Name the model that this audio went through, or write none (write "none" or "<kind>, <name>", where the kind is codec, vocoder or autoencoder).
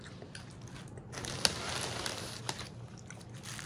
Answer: none